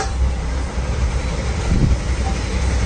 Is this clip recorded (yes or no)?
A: yes